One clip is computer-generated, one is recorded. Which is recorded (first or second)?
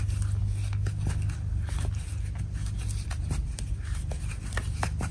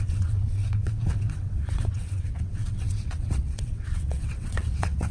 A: first